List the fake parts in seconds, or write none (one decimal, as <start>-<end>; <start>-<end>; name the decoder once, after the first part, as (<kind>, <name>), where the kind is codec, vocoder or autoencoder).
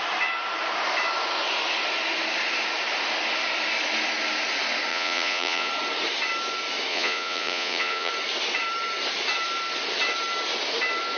4.9-5.7 (vocoder, Vocos); 6.9-8.1